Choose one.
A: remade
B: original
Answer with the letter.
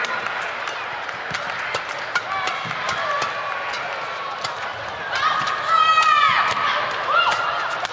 B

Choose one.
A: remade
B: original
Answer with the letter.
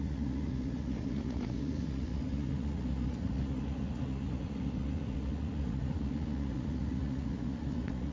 A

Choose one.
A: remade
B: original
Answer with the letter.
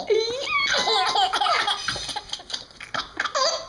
B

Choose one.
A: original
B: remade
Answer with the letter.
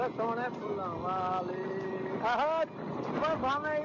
A